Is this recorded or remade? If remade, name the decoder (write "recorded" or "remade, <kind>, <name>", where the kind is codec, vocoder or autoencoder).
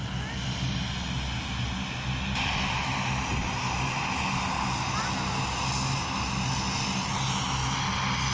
recorded